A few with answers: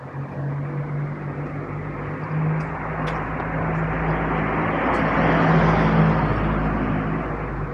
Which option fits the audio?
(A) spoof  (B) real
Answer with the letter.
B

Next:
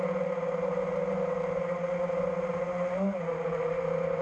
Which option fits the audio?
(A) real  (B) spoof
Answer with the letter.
A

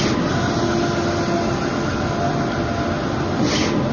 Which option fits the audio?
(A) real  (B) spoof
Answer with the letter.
A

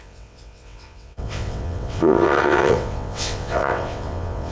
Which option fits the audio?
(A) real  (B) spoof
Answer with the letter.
B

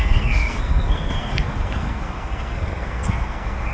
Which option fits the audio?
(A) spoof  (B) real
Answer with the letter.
A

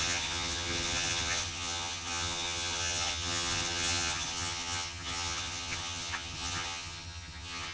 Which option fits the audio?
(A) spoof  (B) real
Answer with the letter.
A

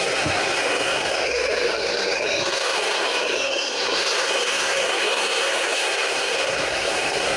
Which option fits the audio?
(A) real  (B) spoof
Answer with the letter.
B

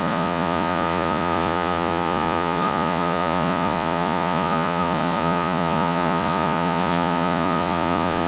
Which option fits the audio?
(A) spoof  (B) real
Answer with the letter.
A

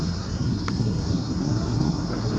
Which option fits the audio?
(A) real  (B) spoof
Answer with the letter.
B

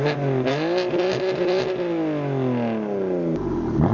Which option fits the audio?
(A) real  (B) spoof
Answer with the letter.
A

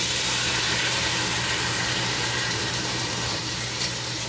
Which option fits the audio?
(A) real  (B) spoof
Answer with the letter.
B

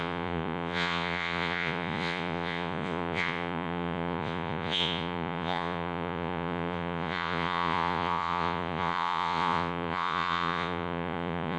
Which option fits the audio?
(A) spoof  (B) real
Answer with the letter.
A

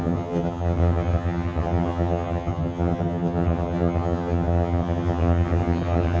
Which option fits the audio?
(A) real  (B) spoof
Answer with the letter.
B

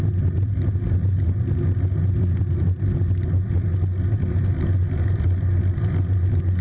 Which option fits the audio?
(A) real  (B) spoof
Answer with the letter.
A